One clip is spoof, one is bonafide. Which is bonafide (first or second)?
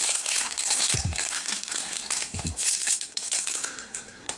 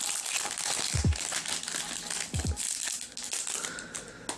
second